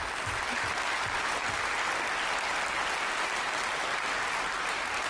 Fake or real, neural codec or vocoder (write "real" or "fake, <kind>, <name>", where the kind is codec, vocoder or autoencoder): real